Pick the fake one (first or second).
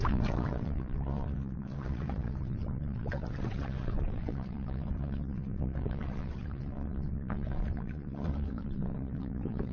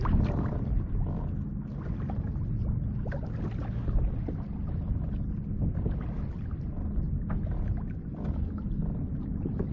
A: first